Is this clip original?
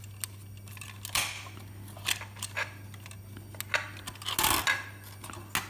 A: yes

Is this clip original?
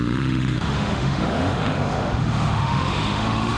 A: no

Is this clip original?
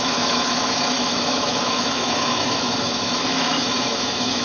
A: no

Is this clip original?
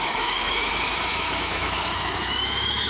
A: no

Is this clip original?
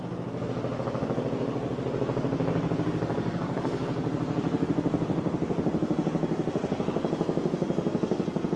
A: yes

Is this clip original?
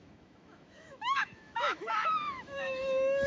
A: no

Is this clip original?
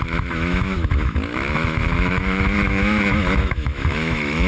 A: no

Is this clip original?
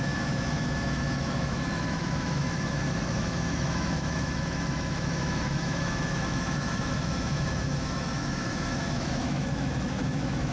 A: no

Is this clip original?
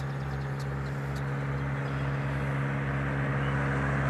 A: yes